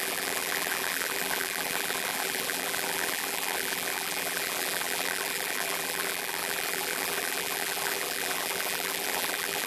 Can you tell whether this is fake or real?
fake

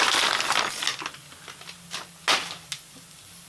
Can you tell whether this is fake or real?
real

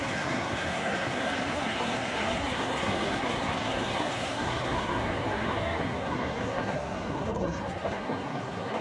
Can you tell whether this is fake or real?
fake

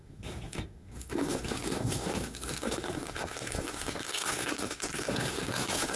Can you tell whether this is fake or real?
fake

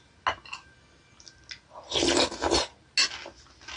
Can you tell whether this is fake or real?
real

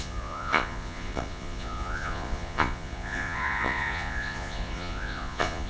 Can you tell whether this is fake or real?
fake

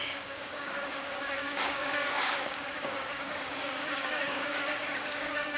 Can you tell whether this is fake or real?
fake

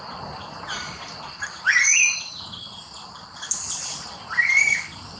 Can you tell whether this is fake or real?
fake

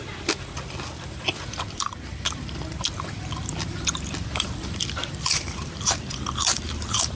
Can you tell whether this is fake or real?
fake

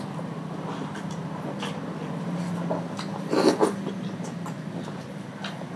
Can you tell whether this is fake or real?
real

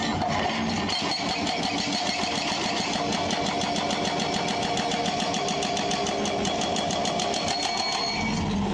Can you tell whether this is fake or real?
real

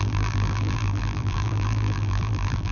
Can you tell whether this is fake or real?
fake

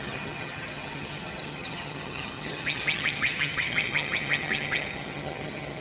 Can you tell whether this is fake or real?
fake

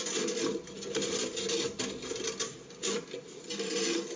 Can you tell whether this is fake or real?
real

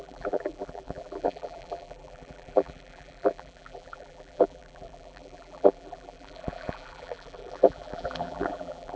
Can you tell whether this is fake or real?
fake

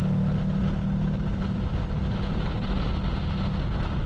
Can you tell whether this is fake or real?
real